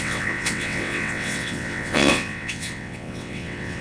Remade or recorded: remade